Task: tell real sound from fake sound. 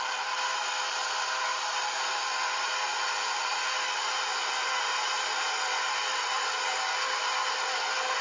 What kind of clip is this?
real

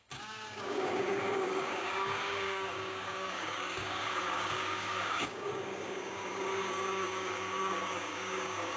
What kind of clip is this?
fake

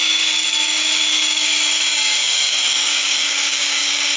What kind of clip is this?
fake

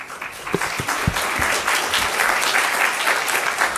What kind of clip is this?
real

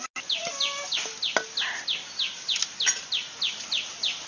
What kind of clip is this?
real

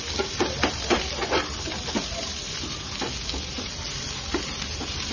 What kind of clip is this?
real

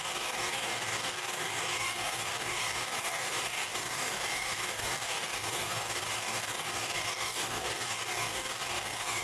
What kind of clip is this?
fake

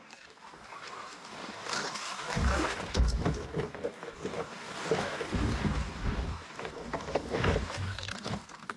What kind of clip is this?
fake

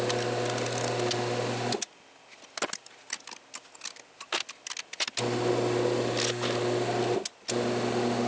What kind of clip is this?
real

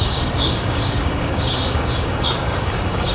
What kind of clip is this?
fake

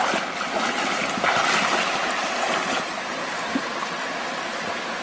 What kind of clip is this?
real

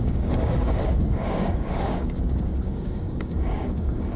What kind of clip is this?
fake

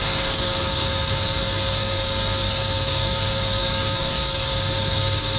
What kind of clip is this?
fake